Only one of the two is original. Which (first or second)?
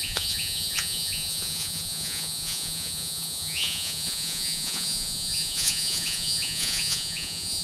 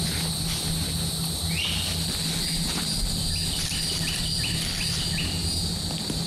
second